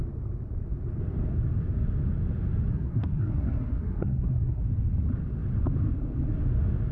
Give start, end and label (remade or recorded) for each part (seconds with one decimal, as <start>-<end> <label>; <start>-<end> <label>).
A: 0.0-2.7 recorded; 2.7-4.6 remade; 4.6-6.9 recorded